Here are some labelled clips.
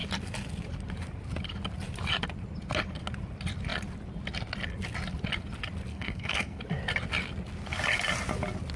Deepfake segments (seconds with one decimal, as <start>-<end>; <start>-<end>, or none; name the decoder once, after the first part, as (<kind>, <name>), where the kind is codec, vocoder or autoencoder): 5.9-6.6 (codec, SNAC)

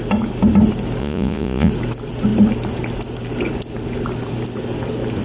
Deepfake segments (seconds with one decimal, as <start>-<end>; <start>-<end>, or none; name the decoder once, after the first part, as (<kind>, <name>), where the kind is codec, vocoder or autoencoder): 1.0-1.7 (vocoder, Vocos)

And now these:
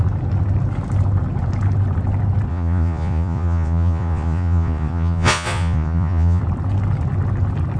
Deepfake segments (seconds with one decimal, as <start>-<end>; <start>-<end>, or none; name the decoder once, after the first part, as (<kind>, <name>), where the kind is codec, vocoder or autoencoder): 2.5-6.4 (vocoder, Vocos)

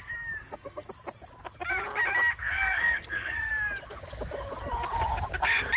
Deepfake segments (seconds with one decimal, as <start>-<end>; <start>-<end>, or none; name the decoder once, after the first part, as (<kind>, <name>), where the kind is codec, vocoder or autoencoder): 0.4-0.9 (codec, SNAC); 2.4-3.5

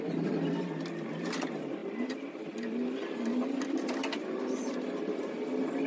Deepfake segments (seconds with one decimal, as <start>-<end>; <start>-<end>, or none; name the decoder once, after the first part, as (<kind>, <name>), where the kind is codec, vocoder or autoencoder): none